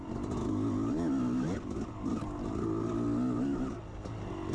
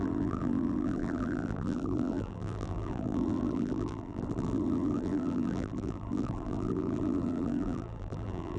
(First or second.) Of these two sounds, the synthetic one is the second